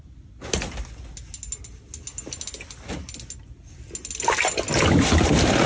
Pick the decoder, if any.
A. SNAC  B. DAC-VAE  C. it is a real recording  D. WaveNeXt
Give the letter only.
C